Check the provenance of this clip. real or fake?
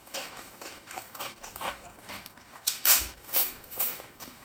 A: fake